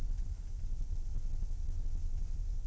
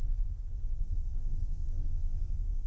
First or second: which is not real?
second